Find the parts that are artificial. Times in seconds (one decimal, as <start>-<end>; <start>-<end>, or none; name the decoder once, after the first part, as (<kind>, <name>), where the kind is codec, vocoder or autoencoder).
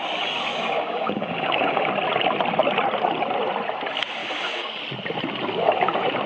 0.5-1.9 (codec, DAC); 4.2-4.8